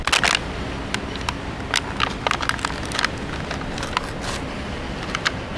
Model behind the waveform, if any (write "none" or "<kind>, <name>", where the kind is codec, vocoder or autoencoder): none